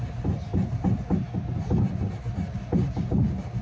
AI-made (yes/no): no